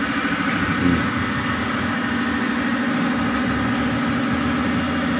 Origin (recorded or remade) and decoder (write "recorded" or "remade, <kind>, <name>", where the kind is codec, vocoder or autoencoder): recorded